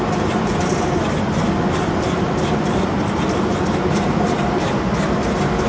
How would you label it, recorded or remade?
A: recorded